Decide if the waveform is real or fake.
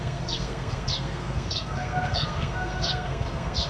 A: fake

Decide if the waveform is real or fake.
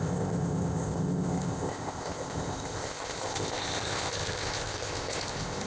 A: fake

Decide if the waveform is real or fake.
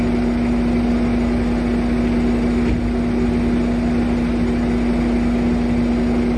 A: real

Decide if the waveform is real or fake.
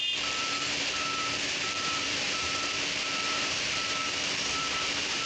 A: fake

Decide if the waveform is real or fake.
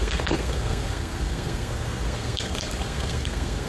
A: fake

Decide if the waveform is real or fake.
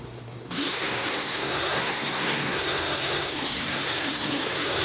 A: fake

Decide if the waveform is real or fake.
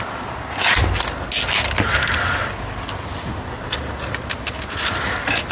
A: real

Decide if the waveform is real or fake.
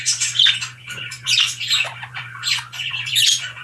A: fake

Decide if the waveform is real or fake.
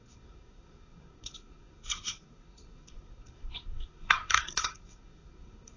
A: fake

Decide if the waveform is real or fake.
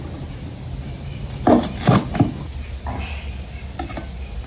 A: real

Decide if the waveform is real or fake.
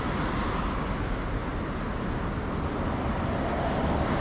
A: real